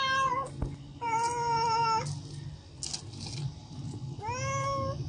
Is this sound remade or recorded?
recorded